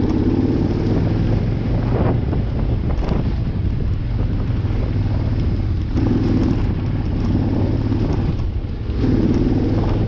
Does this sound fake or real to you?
real